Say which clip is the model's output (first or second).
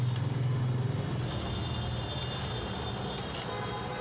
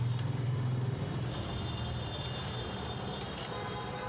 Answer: second